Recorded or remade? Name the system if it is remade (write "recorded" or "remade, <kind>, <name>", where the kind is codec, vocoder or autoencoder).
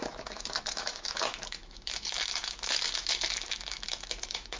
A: remade, autoencoder, DAC-VAE